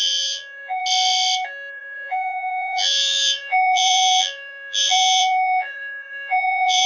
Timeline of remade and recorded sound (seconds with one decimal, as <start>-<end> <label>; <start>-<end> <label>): 0.0-0.8 remade; 0.8-1.7 recorded; 1.7-6.9 remade